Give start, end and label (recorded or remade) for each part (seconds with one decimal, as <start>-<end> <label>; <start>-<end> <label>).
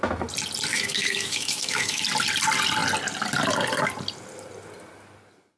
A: 0.0-0.7 recorded; 0.7-2.0 remade; 2.0-5.6 recorded